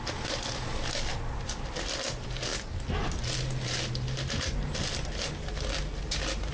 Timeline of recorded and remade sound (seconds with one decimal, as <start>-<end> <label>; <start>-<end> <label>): 0.0-6.5 recorded